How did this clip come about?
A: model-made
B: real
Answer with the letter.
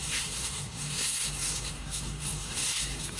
A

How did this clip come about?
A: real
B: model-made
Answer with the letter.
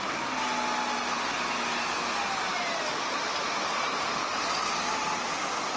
A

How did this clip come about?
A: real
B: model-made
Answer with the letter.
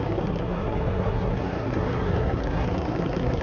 B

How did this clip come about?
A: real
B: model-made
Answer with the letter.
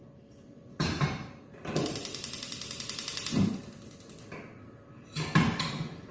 A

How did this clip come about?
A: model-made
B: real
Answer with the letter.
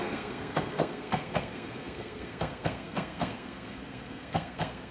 A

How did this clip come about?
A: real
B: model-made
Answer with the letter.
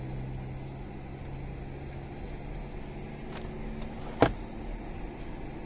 A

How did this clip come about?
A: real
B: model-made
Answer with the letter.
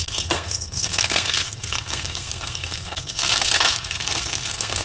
B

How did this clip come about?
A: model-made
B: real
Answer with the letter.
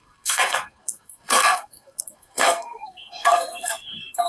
A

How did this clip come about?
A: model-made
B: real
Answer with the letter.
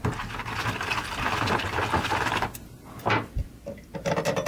B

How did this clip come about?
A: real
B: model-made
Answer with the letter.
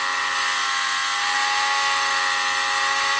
A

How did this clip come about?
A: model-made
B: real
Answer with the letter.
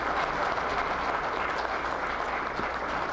B